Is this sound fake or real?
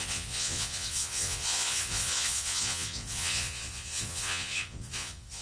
fake